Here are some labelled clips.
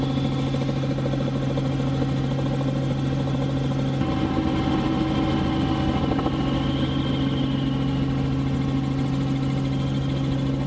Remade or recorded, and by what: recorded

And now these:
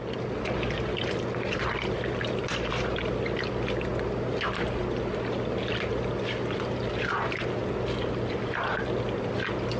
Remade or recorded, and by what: recorded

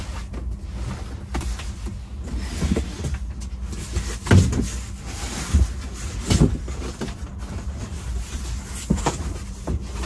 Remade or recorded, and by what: recorded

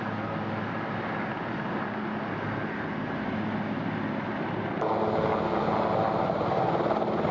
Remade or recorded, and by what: recorded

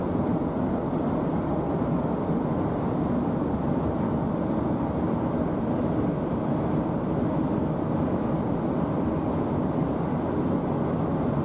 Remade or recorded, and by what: recorded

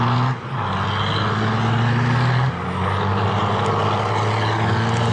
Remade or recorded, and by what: recorded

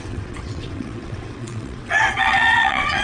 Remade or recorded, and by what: remade, vocoder, WaveNeXt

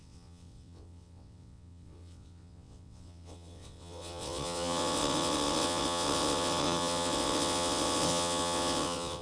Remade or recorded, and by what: remade, vocoder, WaveNeXt